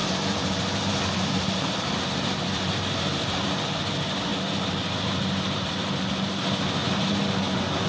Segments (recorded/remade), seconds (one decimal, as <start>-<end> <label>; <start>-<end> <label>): 0.0-3.8 remade; 3.8-4.3 recorded; 4.3-5.7 remade; 5.7-6.8 recorded; 6.8-7.4 remade; 7.4-7.9 recorded